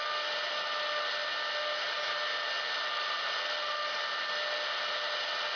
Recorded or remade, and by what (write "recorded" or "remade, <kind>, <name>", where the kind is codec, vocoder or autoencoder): recorded